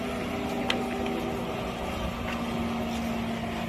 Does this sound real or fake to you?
real